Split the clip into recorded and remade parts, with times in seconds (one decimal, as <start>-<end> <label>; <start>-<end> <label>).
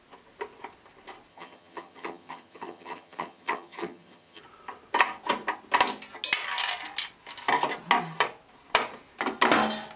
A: 0.0-1.3 recorded; 1.3-4.4 remade; 4.4-10.0 recorded